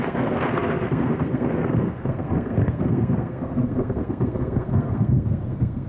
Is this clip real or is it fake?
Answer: fake